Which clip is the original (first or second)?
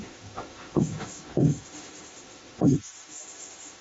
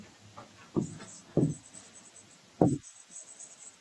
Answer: second